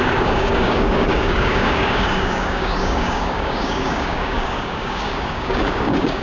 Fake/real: fake